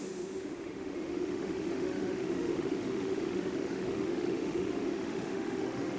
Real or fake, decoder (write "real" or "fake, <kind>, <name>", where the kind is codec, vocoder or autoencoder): fake, autoencoder, DAC-VAE